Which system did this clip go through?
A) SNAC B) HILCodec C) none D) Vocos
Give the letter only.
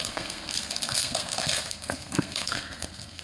A